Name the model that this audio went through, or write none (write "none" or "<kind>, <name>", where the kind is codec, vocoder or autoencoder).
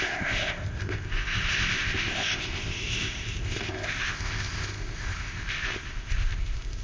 codec, ZipCodec